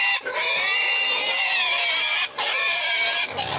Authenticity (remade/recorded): recorded